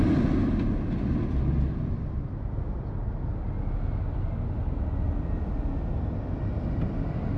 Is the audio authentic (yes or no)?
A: yes